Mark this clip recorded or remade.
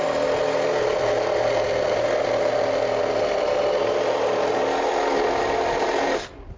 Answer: recorded